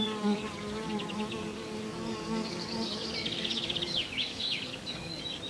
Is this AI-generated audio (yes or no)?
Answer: yes